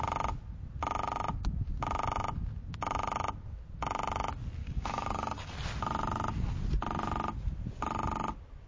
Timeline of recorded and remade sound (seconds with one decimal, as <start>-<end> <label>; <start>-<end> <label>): 0.0-4.6 recorded; 4.6-5.5 remade; 5.5-8.7 recorded